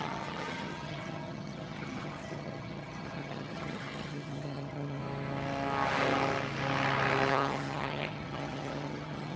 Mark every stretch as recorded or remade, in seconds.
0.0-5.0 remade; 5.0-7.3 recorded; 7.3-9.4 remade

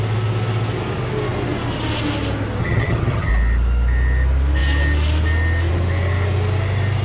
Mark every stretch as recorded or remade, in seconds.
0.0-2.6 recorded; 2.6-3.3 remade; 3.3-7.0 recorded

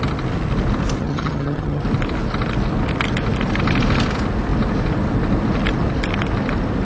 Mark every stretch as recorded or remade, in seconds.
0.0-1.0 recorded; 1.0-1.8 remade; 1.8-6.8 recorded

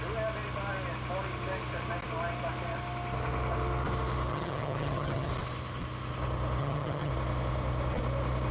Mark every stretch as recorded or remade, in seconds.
0.0-4.3 recorded; 4.3-5.3 remade; 5.3-6.6 recorded; 6.6-7.1 remade; 7.1-8.5 recorded

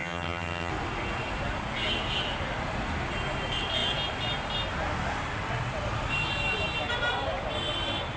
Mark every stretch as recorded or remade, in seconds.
0.0-0.7 remade; 0.7-8.2 recorded